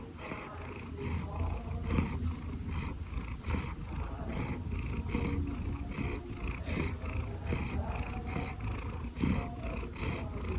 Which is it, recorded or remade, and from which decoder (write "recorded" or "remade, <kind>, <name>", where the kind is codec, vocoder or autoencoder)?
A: recorded